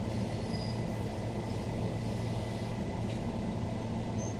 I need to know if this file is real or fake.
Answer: real